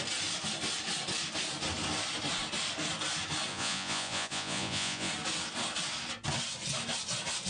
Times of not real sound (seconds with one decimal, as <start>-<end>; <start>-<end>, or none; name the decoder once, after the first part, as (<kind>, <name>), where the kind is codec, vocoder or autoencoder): 3.5-5.1 (vocoder, Vocos)